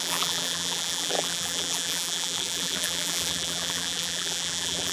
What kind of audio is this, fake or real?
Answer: fake